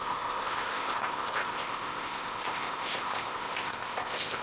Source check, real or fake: fake